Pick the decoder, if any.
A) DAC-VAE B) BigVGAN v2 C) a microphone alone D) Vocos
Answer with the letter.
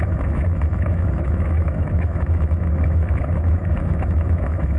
A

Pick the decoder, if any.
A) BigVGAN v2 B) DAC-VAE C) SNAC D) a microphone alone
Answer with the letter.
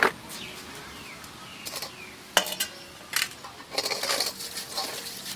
D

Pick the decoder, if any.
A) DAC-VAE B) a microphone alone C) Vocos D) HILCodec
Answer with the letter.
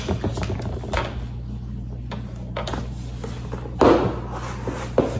B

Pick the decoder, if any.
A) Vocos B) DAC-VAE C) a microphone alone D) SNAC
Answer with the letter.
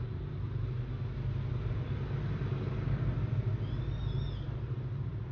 C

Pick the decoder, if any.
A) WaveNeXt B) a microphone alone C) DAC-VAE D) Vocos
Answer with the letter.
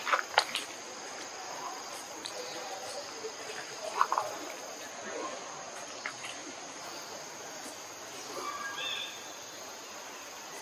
B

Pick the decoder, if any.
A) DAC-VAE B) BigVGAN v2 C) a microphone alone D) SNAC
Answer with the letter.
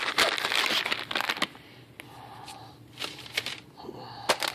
C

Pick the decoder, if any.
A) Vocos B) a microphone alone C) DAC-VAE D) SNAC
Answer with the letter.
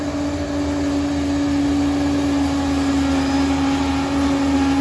B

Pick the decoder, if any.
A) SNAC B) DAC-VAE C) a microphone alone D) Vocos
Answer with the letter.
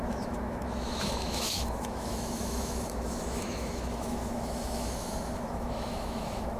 B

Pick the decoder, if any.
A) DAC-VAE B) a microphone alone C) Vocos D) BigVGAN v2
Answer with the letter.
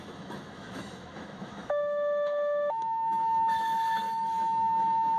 A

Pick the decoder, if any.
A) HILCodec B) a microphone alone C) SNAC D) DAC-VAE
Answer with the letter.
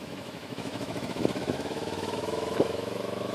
D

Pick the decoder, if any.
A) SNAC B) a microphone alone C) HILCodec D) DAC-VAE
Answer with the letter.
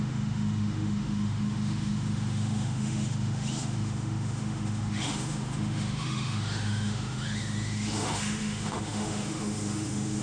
D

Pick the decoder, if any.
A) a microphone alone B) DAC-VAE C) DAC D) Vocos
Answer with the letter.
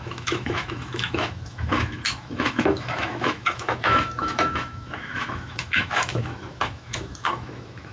B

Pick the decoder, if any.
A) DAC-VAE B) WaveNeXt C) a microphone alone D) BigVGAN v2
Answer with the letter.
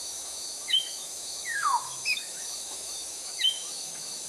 A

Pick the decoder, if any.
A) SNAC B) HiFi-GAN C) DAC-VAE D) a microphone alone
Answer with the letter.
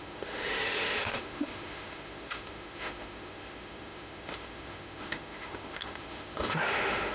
C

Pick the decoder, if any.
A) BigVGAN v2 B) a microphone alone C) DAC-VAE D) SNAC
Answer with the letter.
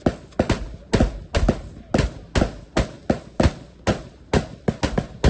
B